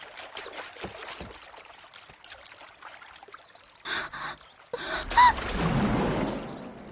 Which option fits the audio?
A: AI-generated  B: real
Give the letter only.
B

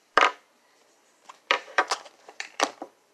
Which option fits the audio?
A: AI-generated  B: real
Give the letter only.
A